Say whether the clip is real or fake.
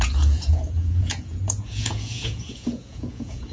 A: fake